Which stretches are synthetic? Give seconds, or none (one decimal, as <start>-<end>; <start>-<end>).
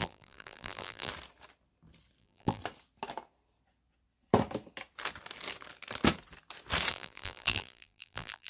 0.0-1.1; 2.2-2.6; 6.9-8.5